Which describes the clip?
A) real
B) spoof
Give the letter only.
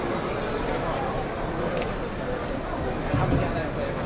A